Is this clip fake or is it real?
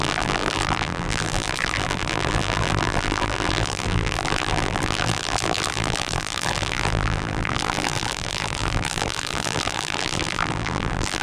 fake